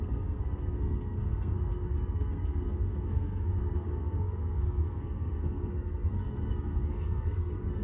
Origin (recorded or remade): remade